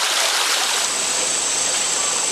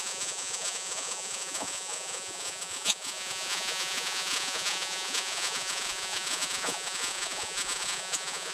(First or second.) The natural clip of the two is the first